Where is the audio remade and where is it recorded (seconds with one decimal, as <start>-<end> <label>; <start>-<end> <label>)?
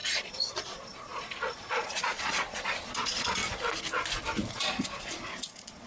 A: 0.0-3.4 remade; 3.4-4.5 recorded; 4.5-5.9 remade